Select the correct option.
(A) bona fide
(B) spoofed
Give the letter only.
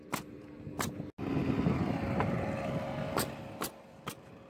A